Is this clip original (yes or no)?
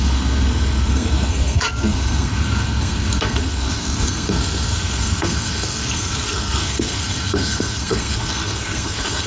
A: no